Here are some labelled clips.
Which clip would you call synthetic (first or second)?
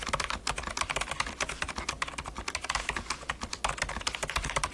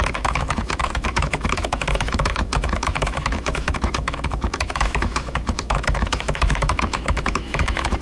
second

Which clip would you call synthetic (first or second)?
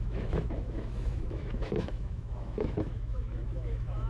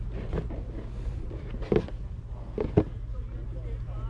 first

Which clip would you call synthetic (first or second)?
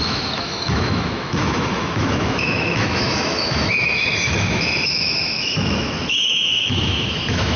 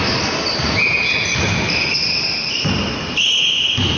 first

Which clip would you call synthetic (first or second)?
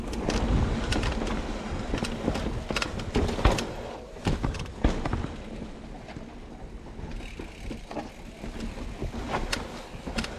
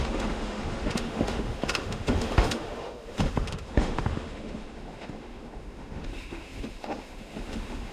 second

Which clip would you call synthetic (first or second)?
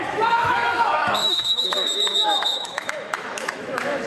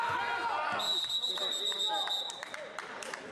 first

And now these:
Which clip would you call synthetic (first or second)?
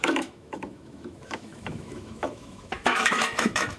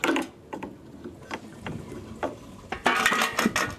first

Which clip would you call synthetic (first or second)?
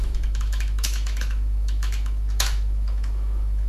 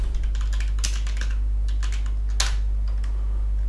first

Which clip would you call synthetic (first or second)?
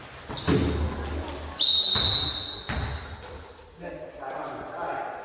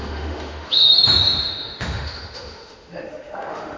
second